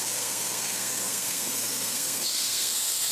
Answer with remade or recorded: remade